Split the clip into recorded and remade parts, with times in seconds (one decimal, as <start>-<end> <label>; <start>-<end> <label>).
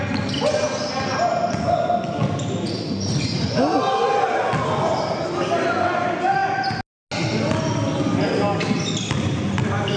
0.0-10.0 recorded